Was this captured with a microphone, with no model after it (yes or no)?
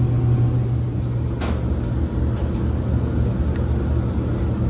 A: yes